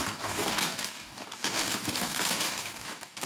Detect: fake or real fake